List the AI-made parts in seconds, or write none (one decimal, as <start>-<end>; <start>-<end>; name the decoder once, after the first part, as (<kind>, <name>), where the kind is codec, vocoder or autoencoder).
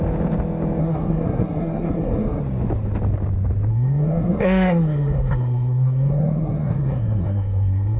0.8-2.4 (codec, SNAC); 3.7-8.0